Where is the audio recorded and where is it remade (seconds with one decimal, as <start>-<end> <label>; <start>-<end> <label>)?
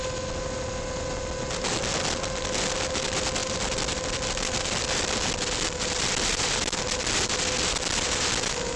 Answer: 0.0-1.9 recorded; 1.9-2.8 remade; 2.8-3.4 recorded; 3.4-6.6 remade; 6.6-8.8 recorded